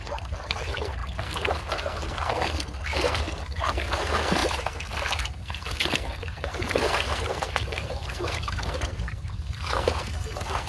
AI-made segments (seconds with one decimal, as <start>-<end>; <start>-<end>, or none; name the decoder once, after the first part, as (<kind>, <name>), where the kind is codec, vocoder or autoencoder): 0.0-10.7 (codec, SNAC)